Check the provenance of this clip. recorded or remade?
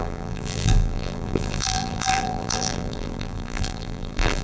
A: remade